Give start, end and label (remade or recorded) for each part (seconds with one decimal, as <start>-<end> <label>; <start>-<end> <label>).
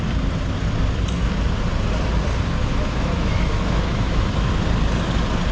0.0-2.6 recorded; 2.6-4.5 remade; 4.5-5.5 recorded